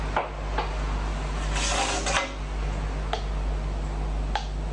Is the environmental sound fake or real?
real